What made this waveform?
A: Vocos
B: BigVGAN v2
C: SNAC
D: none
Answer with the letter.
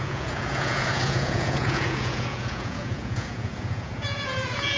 A